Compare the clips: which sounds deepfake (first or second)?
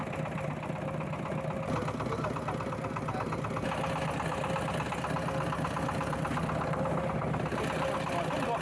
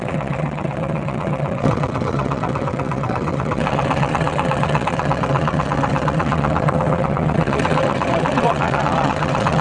second